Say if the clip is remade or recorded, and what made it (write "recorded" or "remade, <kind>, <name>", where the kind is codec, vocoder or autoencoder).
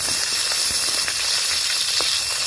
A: remade, vocoder, BigVGAN v2